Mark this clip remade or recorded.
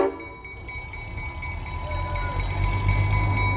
recorded